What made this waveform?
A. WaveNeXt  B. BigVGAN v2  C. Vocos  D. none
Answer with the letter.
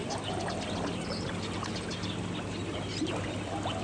D